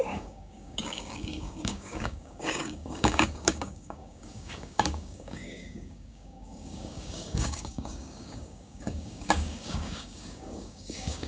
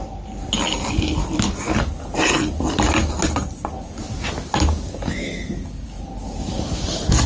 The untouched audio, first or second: second